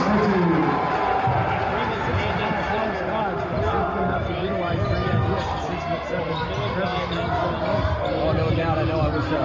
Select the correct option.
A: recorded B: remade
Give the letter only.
A